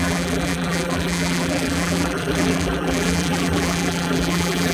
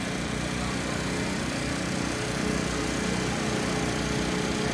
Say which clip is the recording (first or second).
second